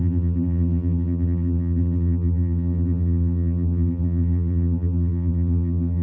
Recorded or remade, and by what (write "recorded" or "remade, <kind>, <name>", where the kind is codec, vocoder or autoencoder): remade, vocoder, BigVGAN v2